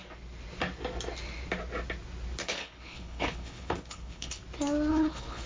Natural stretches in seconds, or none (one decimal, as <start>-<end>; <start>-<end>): 0.0-2.4; 4.4-4.9